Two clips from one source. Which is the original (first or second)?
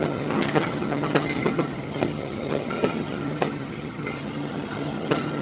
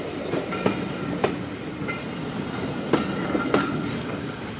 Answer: second